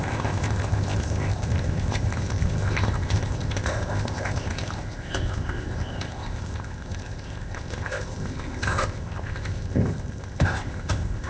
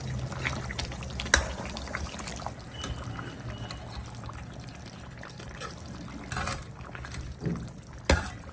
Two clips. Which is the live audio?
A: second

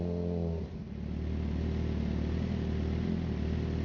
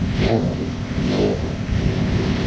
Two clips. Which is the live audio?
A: first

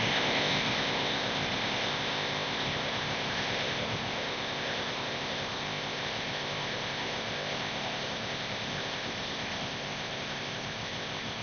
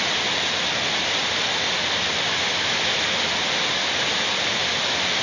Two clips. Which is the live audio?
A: second